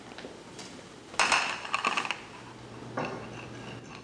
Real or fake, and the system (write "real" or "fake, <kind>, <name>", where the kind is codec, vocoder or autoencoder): real